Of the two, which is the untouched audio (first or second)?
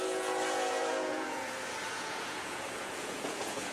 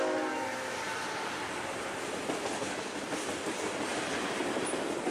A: second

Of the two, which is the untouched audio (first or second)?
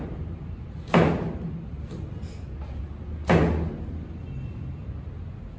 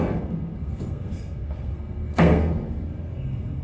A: first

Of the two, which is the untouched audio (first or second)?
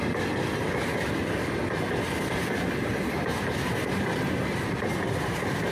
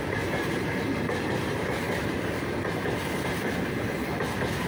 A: first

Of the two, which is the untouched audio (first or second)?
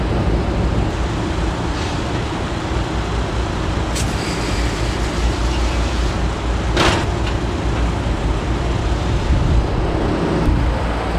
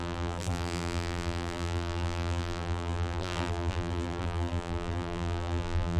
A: first